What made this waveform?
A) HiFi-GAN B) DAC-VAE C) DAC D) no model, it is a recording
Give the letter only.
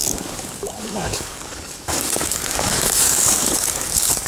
C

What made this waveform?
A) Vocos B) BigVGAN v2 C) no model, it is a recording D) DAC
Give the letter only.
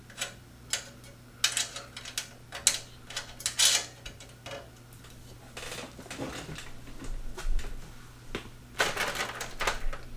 C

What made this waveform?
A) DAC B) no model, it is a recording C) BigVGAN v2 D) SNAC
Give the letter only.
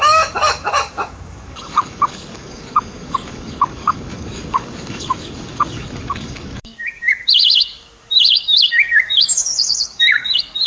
A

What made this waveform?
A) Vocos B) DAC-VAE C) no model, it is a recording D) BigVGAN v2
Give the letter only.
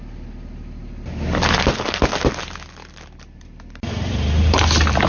C